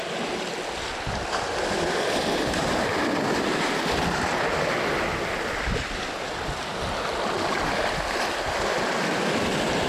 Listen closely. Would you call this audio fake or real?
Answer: real